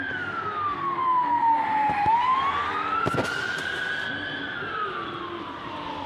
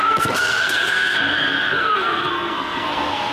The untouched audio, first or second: first